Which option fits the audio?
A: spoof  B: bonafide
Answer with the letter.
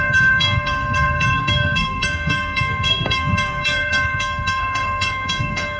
A